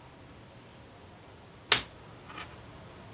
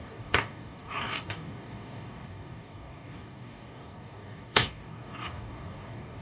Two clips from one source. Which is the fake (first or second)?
second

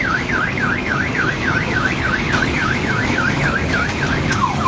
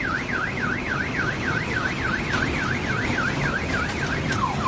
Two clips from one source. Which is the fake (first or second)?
first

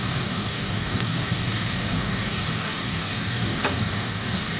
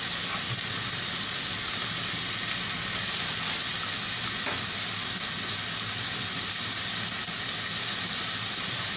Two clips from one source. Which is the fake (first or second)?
first